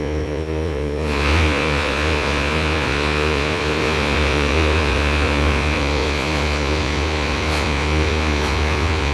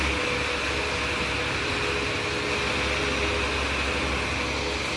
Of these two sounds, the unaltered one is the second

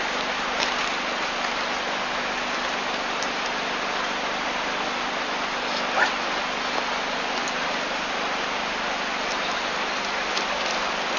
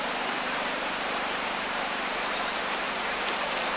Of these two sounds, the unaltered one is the first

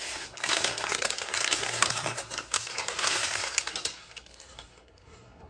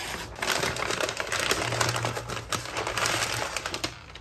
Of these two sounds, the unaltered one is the second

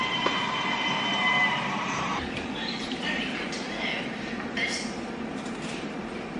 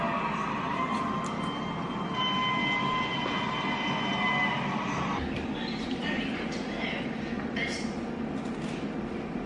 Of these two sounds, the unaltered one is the second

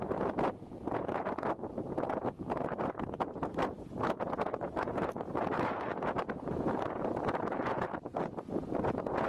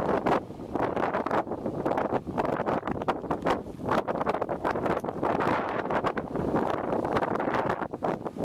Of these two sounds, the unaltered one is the second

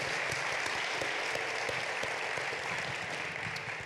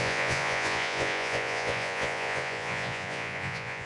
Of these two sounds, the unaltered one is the first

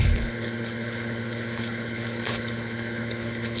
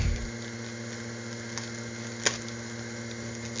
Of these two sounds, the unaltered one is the second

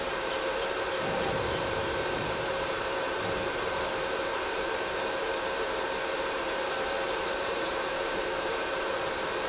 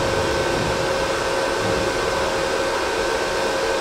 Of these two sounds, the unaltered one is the second